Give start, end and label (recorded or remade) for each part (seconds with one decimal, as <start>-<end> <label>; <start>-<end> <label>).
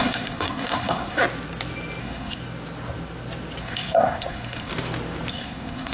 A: 0.0-1.2 remade; 1.2-2.0 recorded; 2.0-2.4 remade; 2.4-3.6 recorded; 3.6-4.7 remade; 4.7-5.3 recorded; 5.3-5.9 remade